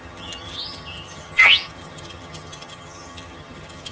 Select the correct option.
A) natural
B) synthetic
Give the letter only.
B